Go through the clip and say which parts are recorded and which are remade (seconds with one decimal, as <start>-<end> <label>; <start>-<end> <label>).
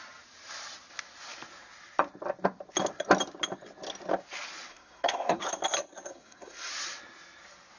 0.0-4.7 recorded; 4.7-5.4 remade; 5.4-6.1 recorded; 6.1-6.7 remade; 6.7-7.8 recorded